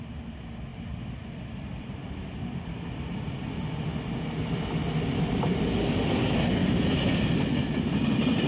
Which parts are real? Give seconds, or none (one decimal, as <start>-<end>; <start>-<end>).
0.0-0.7; 3.3-6.6; 7.2-8.5